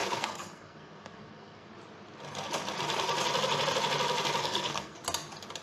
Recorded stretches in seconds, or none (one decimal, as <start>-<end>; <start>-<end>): 1.7-4.4; 5.0-5.6